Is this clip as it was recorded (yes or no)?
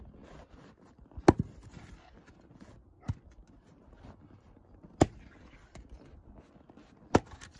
yes